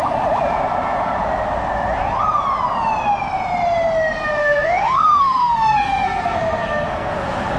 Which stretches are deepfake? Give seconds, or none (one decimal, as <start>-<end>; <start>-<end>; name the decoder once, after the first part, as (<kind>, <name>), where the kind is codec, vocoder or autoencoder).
4.4-7.1 (codec, SNAC)